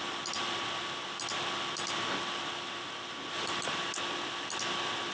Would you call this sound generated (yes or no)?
no